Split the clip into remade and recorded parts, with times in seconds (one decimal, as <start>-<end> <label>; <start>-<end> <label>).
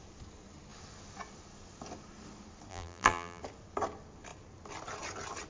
0.0-2.7 recorded; 2.7-3.4 remade; 3.4-5.5 recorded